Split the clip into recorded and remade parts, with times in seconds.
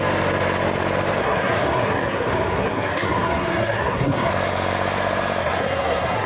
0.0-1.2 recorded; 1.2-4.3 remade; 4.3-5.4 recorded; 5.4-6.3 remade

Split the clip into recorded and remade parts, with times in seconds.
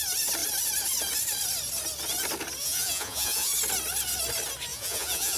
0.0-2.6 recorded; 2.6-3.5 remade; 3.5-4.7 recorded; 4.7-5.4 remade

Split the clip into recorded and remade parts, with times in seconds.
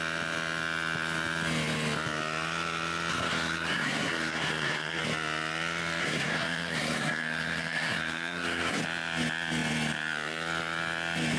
0.0-3.1 recorded; 3.1-5.0 remade; 5.0-6.0 recorded; 6.0-8.8 remade; 8.8-11.4 recorded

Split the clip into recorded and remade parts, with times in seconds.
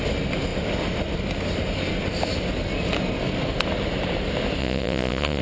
0.0-4.6 recorded; 4.6-5.4 remade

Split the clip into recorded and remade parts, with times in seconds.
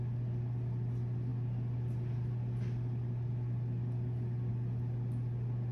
0.0-5.7 recorded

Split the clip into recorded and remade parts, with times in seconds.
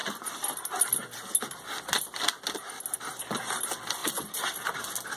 0.0-4.0 recorded; 4.0-4.8 remade; 4.8-5.2 recorded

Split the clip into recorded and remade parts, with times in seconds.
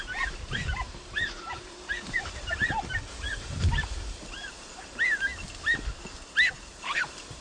0.0-5.3 remade; 5.3-6.8 recorded; 6.8-7.4 remade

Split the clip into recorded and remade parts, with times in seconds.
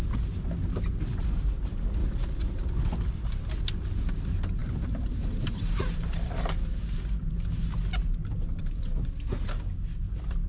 0.0-2.0 recorded; 2.0-2.8 remade; 2.8-4.6 recorded; 4.6-6.5 remade; 6.5-8.2 recorded; 8.2-8.8 remade; 8.8-10.5 recorded